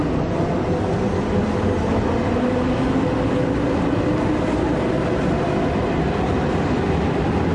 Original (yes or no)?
yes